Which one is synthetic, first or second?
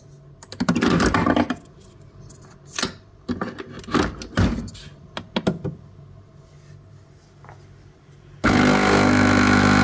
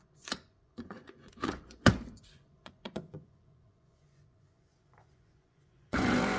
second